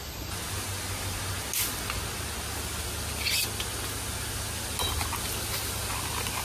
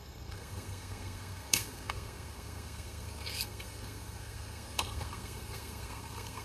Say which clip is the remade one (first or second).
second